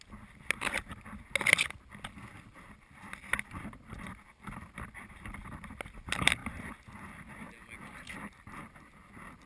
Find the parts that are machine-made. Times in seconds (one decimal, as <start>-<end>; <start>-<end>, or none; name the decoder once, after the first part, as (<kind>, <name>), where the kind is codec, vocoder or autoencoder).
none